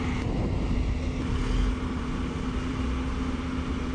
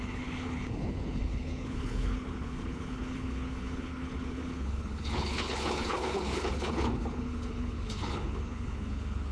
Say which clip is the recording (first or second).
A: first